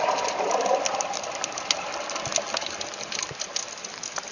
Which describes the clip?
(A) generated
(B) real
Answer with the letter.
B